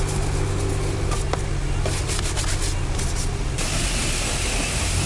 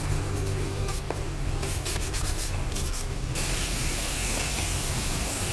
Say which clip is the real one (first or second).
first